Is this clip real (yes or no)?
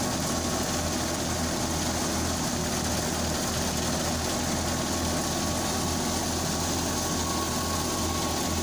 yes